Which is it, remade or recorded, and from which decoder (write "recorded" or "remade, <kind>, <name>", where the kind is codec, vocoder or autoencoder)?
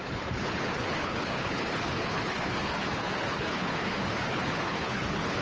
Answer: remade, codec, HILCodec